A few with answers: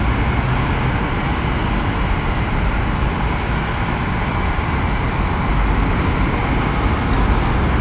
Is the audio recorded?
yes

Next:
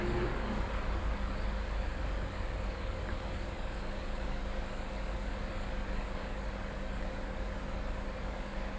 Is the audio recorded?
no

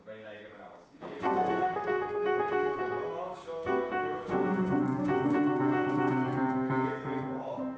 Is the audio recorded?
no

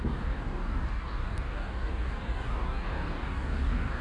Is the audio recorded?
no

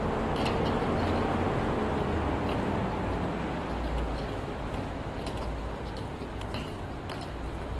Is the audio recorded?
yes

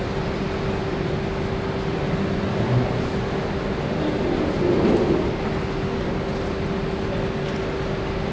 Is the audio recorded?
yes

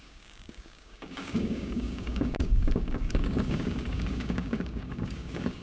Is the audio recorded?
no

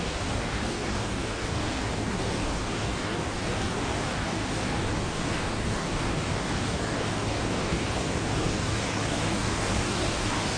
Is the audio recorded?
no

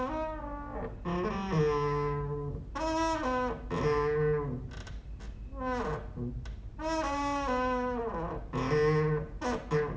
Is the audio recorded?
yes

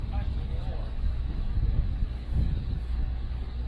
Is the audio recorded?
no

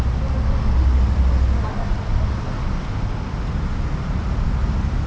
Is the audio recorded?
yes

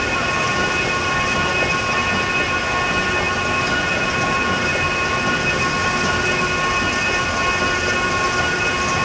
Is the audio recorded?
yes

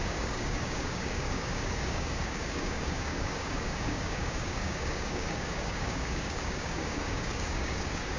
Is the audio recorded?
no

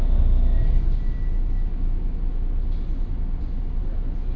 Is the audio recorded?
yes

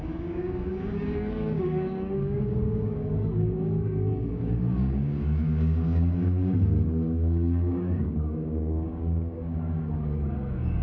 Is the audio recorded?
no